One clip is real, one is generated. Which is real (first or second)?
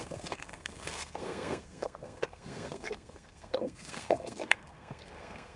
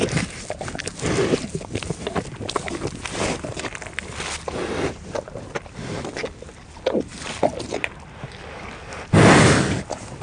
second